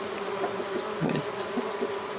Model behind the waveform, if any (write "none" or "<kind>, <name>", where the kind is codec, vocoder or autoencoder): none